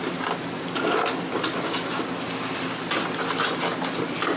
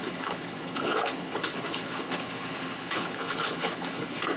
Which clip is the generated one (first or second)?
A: second